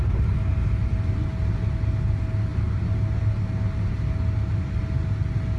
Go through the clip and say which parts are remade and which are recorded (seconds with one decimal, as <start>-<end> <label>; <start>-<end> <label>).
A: 0.0-5.6 recorded